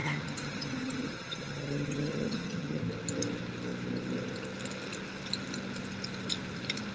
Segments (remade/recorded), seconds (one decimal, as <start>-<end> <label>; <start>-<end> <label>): 0.0-2.8 remade; 2.8-6.9 recorded